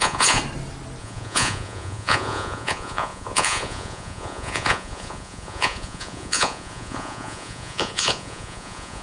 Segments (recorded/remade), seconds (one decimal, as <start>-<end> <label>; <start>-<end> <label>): 0.0-0.4 remade; 0.4-1.0 recorded; 1.0-9.0 remade